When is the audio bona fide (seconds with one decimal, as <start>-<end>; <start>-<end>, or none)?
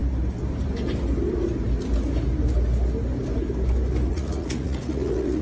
0.0-4.1